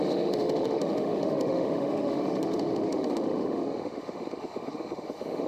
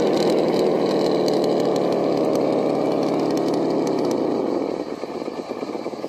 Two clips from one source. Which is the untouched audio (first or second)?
second